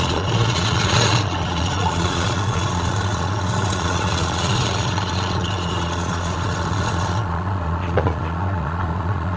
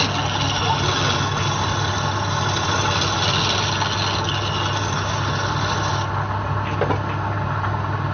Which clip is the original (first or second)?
second